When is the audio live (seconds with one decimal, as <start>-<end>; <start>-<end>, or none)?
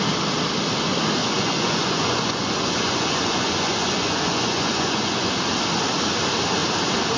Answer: 0.0-1.2; 5.3-7.2